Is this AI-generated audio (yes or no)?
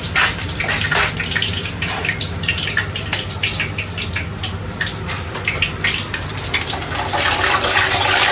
no